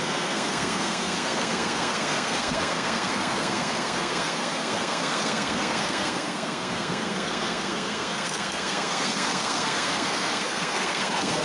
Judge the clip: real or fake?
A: fake